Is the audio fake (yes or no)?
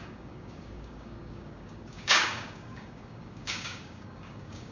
yes